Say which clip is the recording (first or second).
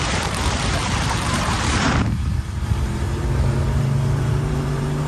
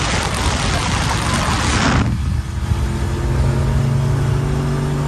second